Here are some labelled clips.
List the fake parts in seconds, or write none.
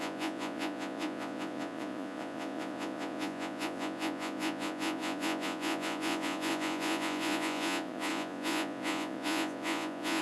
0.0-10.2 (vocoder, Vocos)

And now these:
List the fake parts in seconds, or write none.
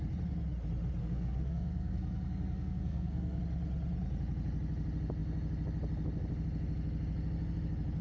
1.0-3.4 (codec, SNAC)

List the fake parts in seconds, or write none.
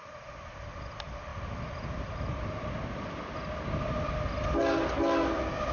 none